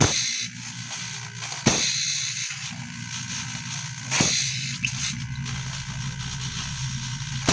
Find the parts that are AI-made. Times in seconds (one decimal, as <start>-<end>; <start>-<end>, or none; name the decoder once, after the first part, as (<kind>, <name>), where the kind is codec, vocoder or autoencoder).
none